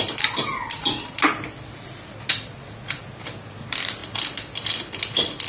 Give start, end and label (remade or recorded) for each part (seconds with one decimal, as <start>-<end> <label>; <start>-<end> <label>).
0.0-5.5 recorded